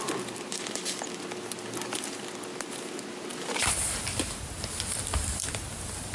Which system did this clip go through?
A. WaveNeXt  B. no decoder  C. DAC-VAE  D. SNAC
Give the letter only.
B